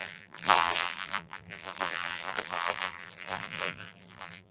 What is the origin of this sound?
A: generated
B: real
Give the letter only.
A